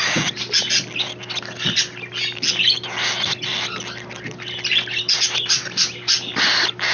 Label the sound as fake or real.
real